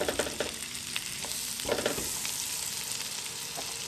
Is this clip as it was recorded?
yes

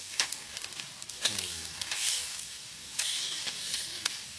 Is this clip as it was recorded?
no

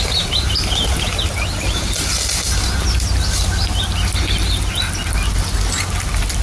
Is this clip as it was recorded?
yes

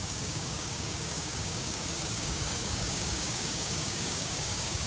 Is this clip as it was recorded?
no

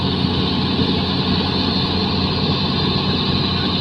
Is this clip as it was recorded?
yes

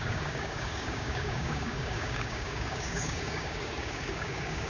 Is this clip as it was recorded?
no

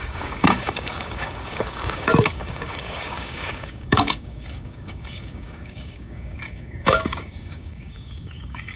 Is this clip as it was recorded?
no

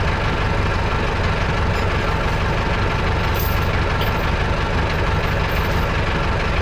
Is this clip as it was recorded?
yes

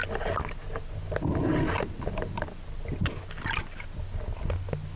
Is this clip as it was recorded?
yes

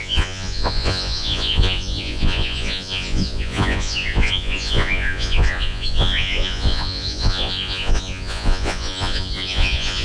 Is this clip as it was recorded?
no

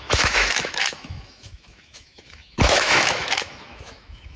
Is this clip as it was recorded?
no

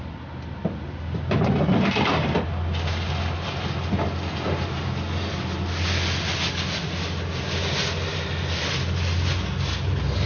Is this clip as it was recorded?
yes